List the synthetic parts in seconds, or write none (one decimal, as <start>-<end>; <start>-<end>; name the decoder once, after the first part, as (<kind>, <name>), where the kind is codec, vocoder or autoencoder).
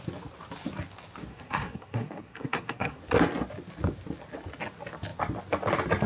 1.3-3.0 (codec, SNAC)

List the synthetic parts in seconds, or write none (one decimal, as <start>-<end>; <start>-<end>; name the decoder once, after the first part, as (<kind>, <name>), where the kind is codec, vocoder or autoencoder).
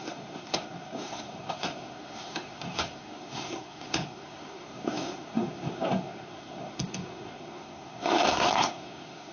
0.0-9.3 (codec, SNAC)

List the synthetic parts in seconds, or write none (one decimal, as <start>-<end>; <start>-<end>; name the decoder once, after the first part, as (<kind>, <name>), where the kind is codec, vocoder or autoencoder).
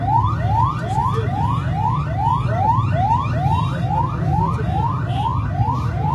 none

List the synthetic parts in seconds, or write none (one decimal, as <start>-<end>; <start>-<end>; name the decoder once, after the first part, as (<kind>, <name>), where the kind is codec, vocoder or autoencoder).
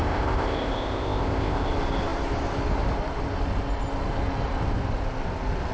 0.0-1.7 (codec, ZipCodec)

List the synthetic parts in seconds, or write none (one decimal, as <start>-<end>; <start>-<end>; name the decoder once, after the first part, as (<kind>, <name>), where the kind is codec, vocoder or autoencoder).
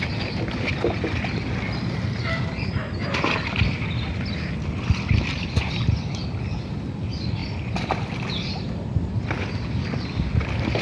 none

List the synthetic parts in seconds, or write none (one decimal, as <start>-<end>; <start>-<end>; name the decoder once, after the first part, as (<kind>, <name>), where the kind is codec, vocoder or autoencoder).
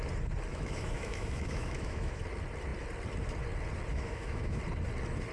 0.5-2.2 (autoencoder, DAC-VAE); 3.9-4.6